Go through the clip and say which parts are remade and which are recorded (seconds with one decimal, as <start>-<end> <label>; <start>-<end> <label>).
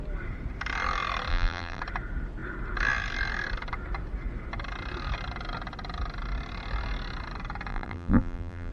0.0-1.3 recorded; 1.3-1.8 remade; 1.8-7.7 recorded; 7.7-8.7 remade